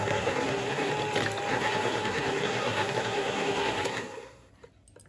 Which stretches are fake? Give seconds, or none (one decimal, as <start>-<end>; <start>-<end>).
0.0-0.9; 1.5-4.5